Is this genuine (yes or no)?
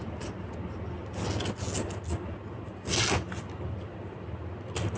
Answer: yes